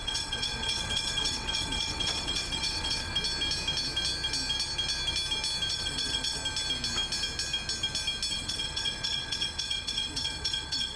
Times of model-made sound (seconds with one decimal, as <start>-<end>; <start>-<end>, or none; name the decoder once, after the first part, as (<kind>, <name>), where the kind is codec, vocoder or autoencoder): 0.0-3.1 (vocoder, WaveNeXt); 5.7-6.4; 8.3-11.0